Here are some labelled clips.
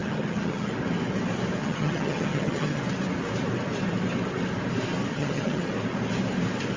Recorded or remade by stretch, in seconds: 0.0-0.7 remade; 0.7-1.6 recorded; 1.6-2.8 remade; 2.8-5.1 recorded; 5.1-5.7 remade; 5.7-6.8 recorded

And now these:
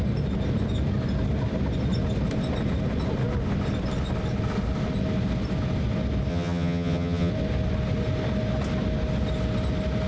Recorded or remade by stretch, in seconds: 0.0-6.3 recorded; 6.3-7.3 remade; 7.3-10.1 recorded

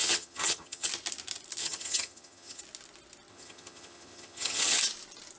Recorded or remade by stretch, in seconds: 0.0-0.9 remade; 0.9-1.6 recorded; 1.6-2.6 remade; 2.6-3.3 recorded; 3.3-4.8 remade; 4.8-5.4 recorded

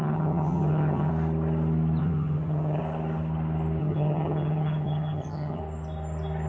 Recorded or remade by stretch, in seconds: 0.0-1.1 remade; 1.1-2.0 recorded; 2.0-2.8 remade; 2.8-3.8 recorded; 3.8-5.6 remade; 5.6-6.5 recorded